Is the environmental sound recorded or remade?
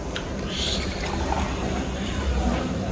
remade